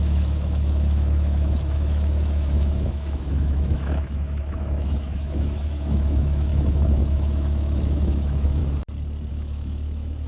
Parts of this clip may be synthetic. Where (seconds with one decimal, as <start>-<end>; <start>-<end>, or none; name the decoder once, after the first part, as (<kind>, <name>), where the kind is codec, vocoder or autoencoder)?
0.0-8.6 (autoencoder, DAC-VAE); 9.3-10.3